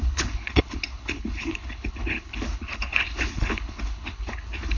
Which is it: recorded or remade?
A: remade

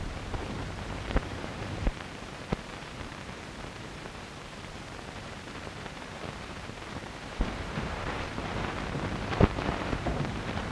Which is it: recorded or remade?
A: remade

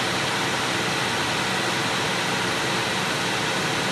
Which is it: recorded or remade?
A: recorded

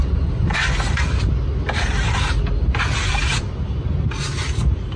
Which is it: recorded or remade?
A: recorded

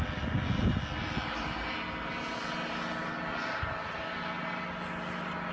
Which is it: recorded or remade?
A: recorded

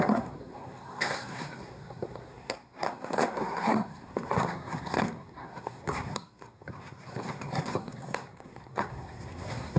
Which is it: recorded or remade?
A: remade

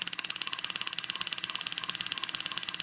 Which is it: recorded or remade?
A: recorded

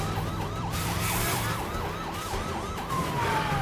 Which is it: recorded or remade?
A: remade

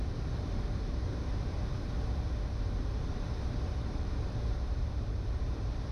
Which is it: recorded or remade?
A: remade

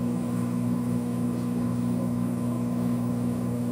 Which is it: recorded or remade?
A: remade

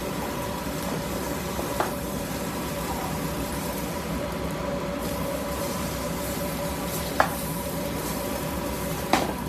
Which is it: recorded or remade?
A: remade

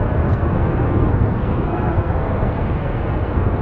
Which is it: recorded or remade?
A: remade